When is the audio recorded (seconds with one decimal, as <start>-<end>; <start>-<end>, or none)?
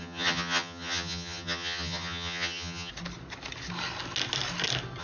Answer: 2.9-5.0